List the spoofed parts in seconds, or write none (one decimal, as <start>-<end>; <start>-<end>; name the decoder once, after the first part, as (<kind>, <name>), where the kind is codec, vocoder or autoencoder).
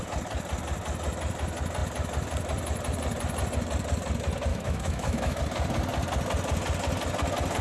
4.5-5.4 (autoencoder, DAC-VAE)